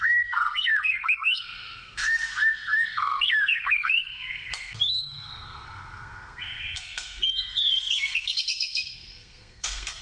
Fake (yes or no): yes